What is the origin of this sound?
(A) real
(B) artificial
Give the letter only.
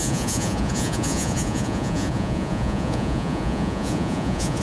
B